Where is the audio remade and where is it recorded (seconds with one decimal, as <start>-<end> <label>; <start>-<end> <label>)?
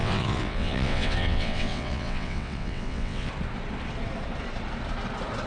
0.0-3.3 remade; 3.3-5.5 recorded